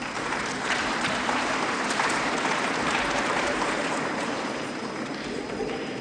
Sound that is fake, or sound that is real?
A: fake